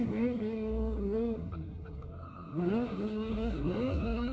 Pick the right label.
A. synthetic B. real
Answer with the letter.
A